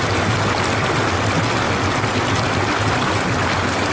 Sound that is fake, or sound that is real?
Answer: real